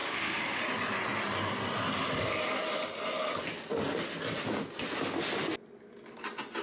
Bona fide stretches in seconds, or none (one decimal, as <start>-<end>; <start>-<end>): 0.6-6.6